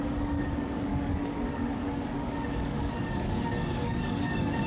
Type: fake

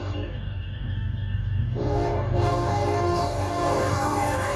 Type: fake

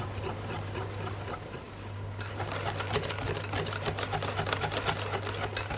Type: real